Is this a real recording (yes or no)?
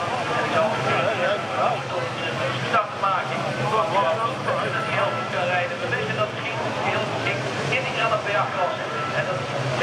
yes